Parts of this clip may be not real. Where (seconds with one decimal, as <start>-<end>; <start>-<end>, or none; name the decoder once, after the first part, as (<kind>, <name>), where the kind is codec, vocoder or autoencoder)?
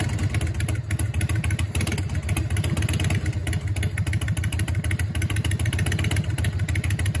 3.4-5.7 (vocoder, BigVGAN v2)